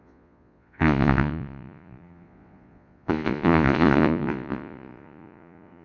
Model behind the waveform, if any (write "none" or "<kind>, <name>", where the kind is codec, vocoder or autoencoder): vocoder, Vocos